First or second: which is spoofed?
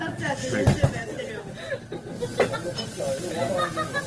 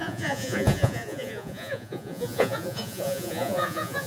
second